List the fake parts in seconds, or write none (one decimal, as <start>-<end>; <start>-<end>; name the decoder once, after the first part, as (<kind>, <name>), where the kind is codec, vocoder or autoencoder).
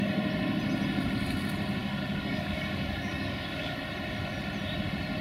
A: 1.8-3.8 (codec, DAC)